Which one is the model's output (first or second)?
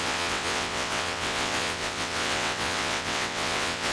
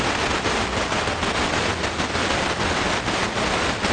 first